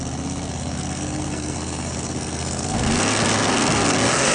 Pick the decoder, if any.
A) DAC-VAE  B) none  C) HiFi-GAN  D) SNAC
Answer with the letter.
D